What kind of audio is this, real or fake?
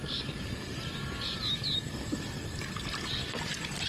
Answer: real